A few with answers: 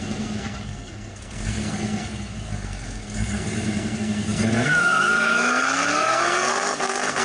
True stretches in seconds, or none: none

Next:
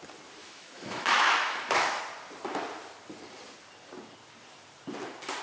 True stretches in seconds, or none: 0.0-0.4; 2.0-5.4

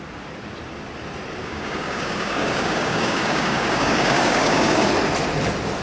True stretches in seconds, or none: 0.0-1.4; 4.9-5.8